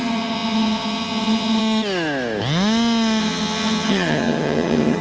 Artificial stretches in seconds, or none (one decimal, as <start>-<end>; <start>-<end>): 0.0-1.6; 3.2-5.0